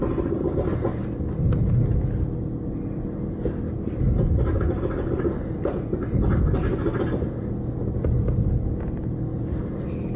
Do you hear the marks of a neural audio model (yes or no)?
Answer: no